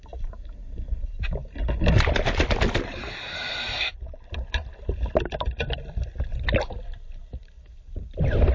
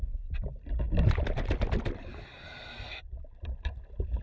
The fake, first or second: second